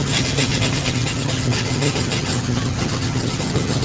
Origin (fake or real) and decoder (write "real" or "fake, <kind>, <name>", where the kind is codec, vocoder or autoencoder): fake, vocoder, HiFi-GAN